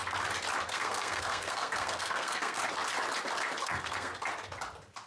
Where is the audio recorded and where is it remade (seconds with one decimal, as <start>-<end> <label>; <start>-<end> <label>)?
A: 0.0-0.7 recorded; 0.7-2.6 remade; 2.6-3.6 recorded; 3.6-4.1 remade; 4.1-5.1 recorded